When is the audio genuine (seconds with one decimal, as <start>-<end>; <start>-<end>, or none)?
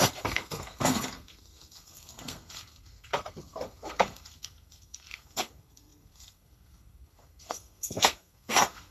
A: none